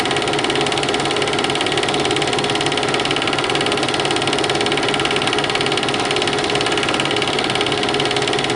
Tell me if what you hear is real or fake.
real